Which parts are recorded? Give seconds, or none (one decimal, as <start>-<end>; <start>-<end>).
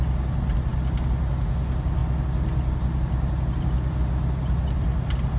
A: 0.0-5.4